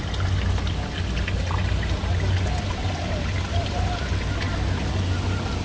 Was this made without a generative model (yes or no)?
yes